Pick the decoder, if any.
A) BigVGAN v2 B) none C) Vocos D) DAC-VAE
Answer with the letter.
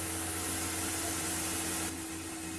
B